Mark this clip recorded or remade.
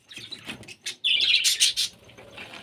recorded